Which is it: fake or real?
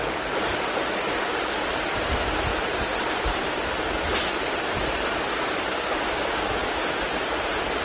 real